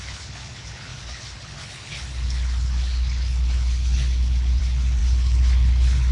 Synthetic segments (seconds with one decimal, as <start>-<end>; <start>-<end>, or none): 0.0-6.1